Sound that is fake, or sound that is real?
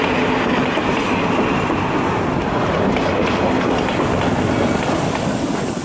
real